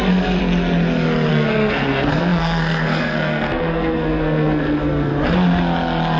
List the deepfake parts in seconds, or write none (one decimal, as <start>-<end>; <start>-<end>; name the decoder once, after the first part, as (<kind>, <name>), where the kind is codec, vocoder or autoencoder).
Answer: 0.0-0.4 (codec, SNAC); 1.3-5.1